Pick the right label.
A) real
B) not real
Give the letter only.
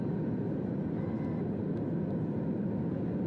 A